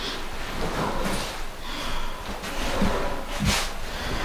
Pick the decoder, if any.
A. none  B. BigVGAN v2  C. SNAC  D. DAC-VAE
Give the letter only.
A